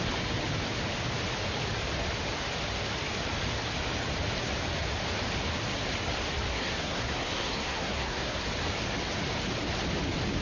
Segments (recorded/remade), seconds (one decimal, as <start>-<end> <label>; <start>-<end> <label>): 0.0-6.5 recorded; 6.5-8.5 remade; 8.5-10.4 recorded